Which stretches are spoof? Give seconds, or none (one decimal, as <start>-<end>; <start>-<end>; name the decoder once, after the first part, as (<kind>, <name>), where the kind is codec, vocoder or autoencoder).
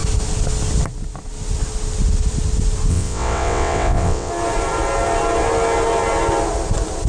2.9-4.3 (vocoder, WaveNeXt)